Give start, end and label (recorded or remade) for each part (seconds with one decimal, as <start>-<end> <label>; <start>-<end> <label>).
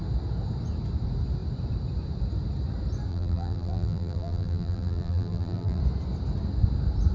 0.0-3.1 recorded; 3.1-5.8 remade; 5.8-7.1 recorded